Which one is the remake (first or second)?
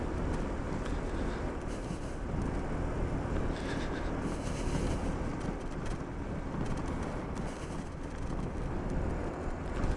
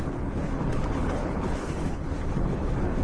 second